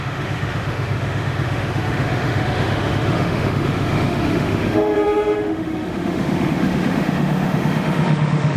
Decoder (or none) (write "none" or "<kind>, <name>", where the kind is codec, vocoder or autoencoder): autoencoder, DAC-VAE